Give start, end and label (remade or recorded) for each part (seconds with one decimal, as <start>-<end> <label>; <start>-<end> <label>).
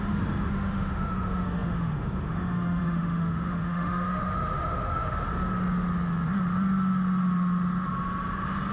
0.0-5.2 remade; 5.2-8.7 recorded